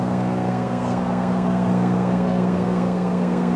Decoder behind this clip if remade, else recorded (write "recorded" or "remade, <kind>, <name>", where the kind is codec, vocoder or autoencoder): remade, codec, SNAC